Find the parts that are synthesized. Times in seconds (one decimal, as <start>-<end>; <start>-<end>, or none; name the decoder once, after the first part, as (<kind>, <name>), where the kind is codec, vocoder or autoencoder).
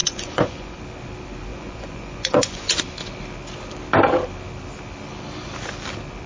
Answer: 0.0-0.8 (vocoder, Vocos); 1.5-2.8